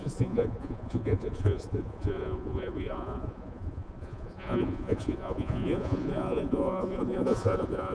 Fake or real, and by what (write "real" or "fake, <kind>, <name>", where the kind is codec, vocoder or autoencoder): fake, vocoder, Vocos